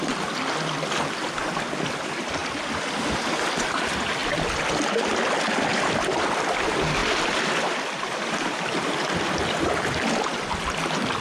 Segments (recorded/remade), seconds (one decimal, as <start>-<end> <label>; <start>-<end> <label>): 0.0-5.7 recorded; 5.7-6.4 remade; 6.4-7.0 recorded; 7.0-9.1 remade; 9.1-11.2 recorded

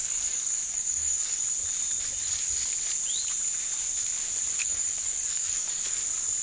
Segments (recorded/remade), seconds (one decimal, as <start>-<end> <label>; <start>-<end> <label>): 0.0-1.4 remade; 1.4-4.6 recorded; 4.6-5.9 remade; 5.9-6.4 recorded

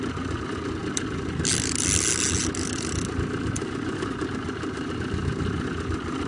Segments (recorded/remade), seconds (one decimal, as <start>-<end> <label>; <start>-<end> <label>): 0.0-6.3 recorded

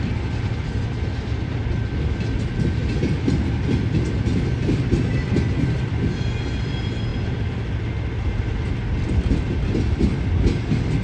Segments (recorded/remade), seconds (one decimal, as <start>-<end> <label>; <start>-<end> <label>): 0.0-11.0 recorded

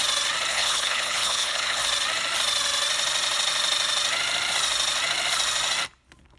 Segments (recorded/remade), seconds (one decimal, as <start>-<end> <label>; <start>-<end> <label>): 0.0-0.5 recorded; 0.5-1.8 remade; 1.8-6.4 recorded